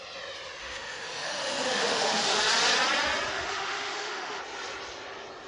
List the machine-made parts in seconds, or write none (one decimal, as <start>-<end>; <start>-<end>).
0.6-2.4; 3.3-4.4